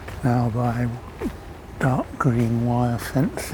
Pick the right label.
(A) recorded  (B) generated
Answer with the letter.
A